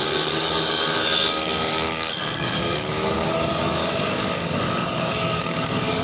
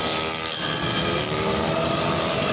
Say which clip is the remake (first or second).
first